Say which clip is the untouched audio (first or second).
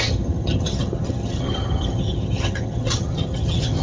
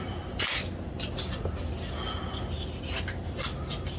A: second